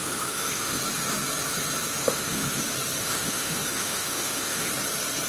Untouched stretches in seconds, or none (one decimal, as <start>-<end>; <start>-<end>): 0.8-2.0; 2.6-3.0; 4.7-5.3

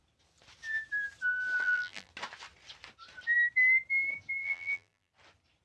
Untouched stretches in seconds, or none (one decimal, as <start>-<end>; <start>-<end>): 0.0-1.6; 2.1-4.4; 5.1-5.6

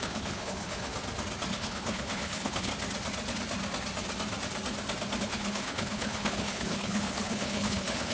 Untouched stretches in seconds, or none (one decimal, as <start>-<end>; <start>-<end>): 0.9-1.5; 2.7-5.2

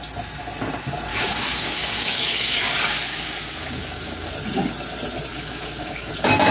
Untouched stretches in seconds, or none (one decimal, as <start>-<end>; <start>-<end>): 0.0-1.1; 4.3-5.3; 6.1-6.5

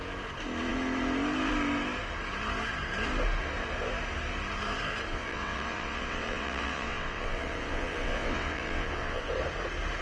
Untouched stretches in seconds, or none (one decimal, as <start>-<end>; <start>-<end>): 0.0-5.1; 9.3-10.0

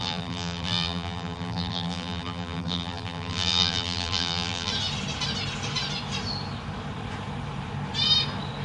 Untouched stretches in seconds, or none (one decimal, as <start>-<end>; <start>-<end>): 4.7-8.6

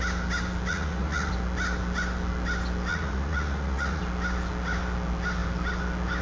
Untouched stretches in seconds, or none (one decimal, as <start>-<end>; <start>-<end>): 0.0-0.7; 1.3-2.9; 4.0-6.2